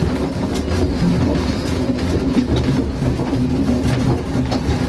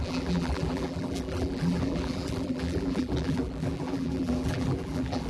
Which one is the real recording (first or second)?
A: first